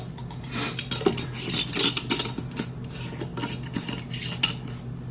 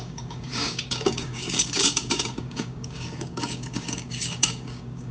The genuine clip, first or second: first